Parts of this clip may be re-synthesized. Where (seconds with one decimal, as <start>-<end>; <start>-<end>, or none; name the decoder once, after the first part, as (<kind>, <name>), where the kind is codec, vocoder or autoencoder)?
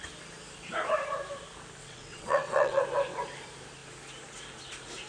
1.8-2.8 (vocoder, WaveNeXt)